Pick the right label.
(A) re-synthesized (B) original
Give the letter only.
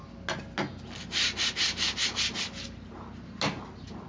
B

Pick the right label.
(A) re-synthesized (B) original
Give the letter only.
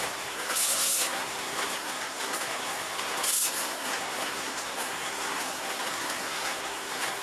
A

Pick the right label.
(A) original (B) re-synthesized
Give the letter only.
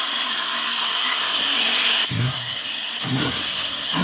B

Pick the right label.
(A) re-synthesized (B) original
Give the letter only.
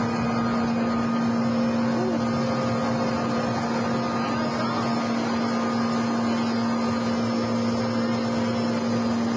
B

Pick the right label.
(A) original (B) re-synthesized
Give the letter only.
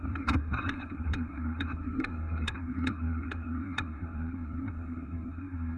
B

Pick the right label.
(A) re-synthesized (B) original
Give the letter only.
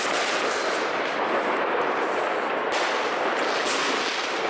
B